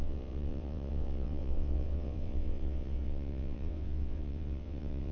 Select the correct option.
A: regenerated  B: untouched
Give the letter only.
A